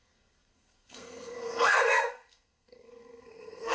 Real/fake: fake